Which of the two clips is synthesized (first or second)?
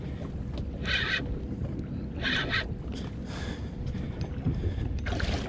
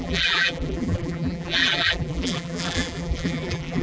second